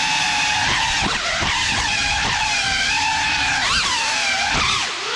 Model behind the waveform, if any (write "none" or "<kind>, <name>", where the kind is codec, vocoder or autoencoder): vocoder, BigVGAN v2